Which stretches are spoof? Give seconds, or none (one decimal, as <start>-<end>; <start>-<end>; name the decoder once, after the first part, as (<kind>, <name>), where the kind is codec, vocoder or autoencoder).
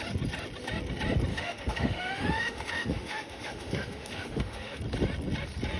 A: 1.3-4.8 (autoencoder, DAC-VAE)